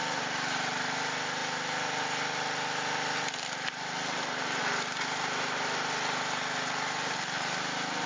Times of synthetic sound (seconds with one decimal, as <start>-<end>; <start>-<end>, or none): none